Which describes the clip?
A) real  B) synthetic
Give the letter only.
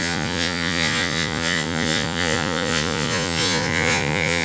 B